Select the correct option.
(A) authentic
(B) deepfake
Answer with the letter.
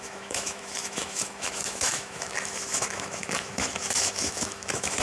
B